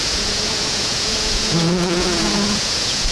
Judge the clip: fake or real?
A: fake